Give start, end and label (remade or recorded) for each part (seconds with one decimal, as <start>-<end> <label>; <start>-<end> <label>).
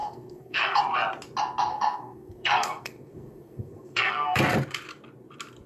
0.0-0.8 remade; 0.8-1.7 recorded; 1.7-4.4 remade; 4.4-5.7 recorded